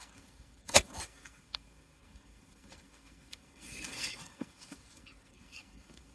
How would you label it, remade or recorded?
remade